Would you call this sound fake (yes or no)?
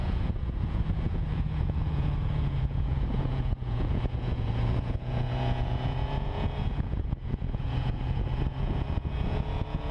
yes